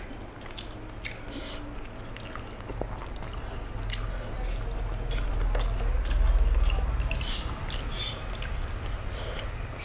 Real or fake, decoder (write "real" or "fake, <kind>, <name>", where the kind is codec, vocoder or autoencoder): real